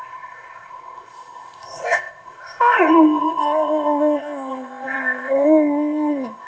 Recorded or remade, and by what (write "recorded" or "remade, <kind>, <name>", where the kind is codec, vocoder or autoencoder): remade, codec, ZipCodec